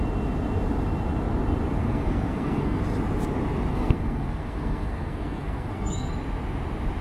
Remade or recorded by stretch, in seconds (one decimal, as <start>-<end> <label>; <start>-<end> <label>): 0.0-1.8 recorded; 1.8-2.8 remade; 2.8-3.7 recorded; 3.7-6.1 remade; 6.1-7.0 recorded